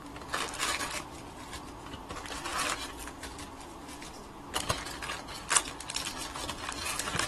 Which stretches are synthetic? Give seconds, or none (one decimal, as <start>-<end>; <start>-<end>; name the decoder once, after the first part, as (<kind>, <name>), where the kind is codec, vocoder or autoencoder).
none